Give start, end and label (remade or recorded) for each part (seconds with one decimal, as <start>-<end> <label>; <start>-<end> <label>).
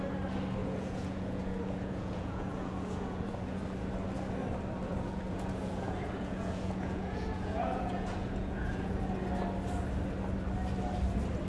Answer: 0.0-0.6 recorded; 0.6-3.6 remade; 3.6-4.9 recorded; 4.9-9.0 remade; 9.0-11.5 recorded